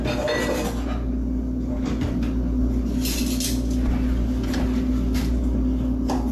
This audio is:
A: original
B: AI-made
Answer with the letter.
A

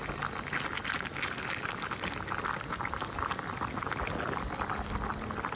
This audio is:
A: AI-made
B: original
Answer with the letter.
B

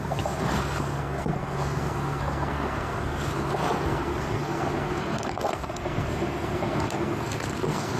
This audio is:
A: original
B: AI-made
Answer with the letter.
B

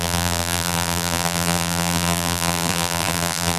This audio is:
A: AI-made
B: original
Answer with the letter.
A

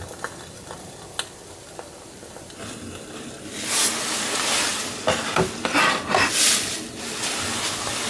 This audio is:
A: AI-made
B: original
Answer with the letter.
B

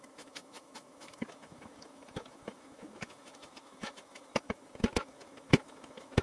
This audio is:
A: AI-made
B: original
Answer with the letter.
A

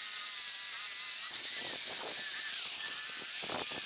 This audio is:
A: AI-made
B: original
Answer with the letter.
B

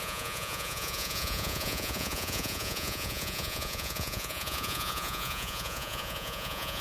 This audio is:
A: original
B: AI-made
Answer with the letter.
B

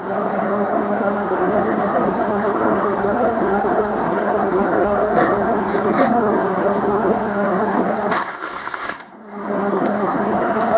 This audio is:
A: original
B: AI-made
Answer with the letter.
B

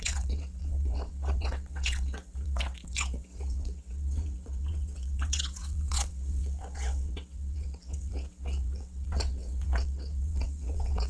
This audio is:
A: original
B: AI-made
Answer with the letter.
B